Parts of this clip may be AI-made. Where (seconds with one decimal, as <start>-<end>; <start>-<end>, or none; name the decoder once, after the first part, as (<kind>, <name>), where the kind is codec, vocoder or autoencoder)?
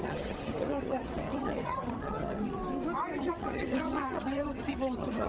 0.0-2.6 (vocoder, HiFi-GAN); 3.2-5.3